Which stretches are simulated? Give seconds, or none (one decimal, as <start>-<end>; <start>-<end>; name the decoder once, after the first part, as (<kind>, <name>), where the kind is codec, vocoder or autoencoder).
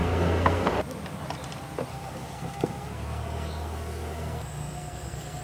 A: 0.0-0.7 (codec, SNAC); 1.9-5.4